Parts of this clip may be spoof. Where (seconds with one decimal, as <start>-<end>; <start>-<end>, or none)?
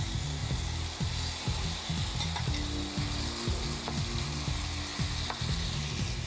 none